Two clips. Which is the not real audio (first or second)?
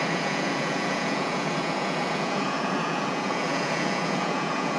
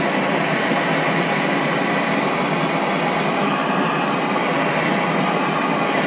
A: first